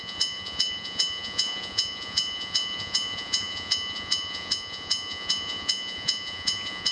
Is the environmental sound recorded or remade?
remade